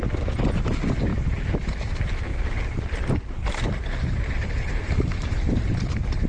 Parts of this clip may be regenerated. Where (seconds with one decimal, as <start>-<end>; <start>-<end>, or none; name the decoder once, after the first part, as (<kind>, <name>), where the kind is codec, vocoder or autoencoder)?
2.3-6.3 (vocoder, BigVGAN v2)